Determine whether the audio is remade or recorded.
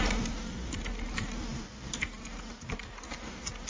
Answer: recorded